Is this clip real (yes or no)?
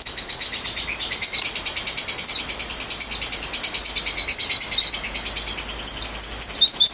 yes